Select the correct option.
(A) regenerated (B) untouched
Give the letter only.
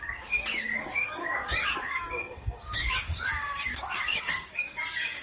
A